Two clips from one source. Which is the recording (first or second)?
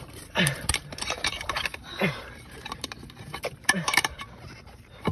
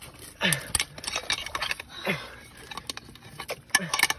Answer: second